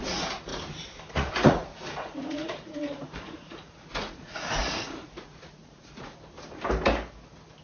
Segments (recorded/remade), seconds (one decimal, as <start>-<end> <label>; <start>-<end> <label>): 0.0-0.5 remade; 0.5-1.1 recorded; 1.1-6.1 remade; 6.1-7.6 recorded

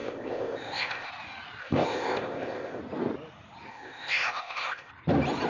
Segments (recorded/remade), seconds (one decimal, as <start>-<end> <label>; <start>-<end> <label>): 0.0-1.1 remade; 1.1-1.6 recorded; 1.6-2.8 remade; 2.8-3.7 recorded; 3.7-4.9 remade; 4.9-5.5 recorded